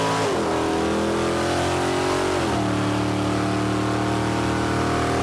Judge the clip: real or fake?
real